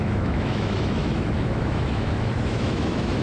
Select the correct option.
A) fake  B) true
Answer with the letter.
A